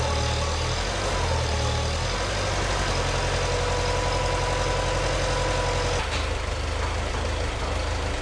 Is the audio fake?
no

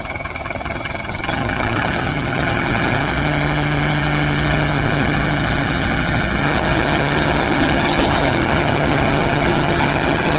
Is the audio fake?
yes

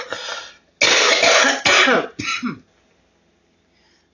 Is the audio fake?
no